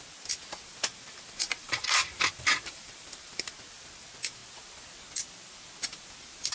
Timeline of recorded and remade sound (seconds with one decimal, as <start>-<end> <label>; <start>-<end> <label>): 0.0-0.9 recorded; 0.9-3.5 remade; 3.5-6.5 recorded